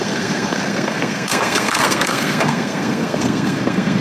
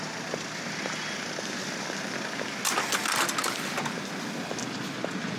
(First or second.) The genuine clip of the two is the second